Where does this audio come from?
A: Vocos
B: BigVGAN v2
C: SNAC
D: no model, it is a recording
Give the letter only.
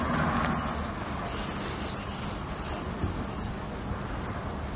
D